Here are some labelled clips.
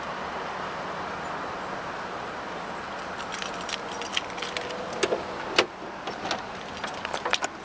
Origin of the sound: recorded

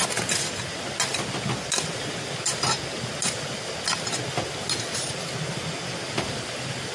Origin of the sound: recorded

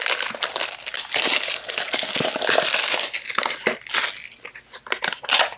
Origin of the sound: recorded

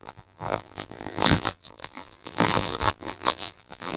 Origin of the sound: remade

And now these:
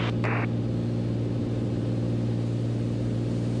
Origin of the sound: recorded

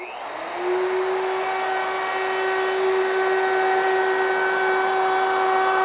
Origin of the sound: recorded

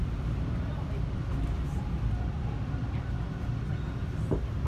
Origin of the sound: recorded